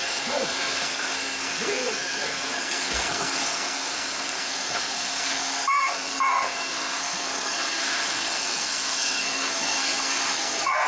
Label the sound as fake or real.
fake